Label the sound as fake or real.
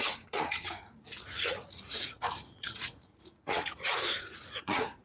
fake